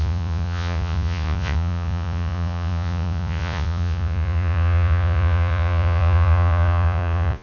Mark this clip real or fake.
fake